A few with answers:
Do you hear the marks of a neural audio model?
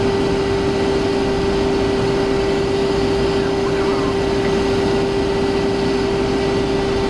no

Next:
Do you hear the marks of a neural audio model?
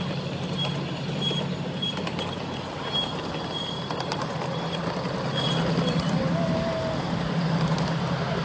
no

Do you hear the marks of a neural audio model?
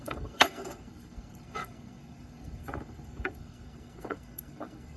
yes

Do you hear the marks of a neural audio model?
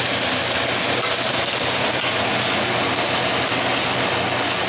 no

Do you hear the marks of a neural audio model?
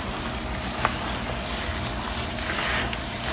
no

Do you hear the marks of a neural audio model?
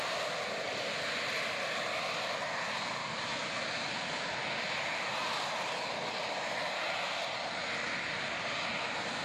no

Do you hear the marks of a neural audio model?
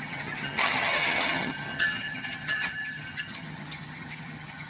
yes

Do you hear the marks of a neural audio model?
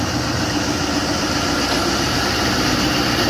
yes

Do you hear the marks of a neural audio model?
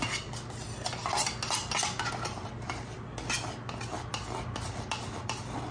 no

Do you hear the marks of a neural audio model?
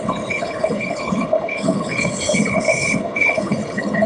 yes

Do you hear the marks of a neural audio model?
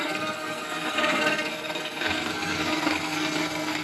yes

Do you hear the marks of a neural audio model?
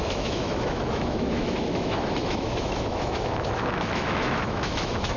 yes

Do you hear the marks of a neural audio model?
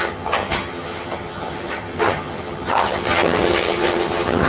yes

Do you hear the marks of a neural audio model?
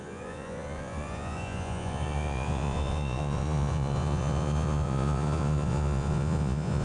yes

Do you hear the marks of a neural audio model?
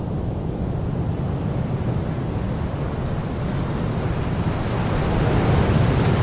no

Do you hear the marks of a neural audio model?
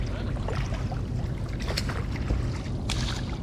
no